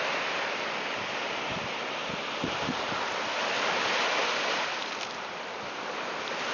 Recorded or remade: recorded